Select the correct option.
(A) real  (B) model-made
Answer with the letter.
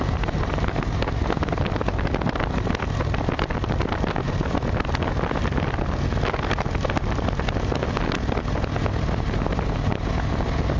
A